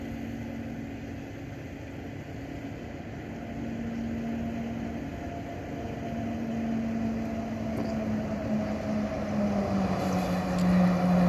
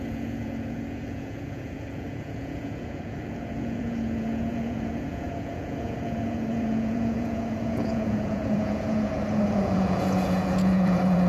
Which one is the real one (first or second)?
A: first